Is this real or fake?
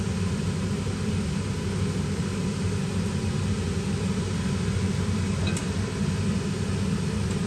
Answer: real